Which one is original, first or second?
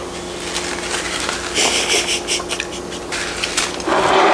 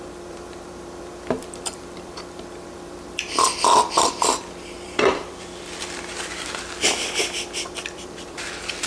first